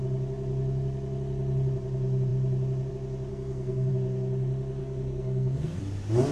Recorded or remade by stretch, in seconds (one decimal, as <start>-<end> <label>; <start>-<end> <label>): 0.0-3.3 recorded; 3.3-3.9 remade; 3.9-4.8 recorded; 4.8-5.8 remade; 5.8-6.3 recorded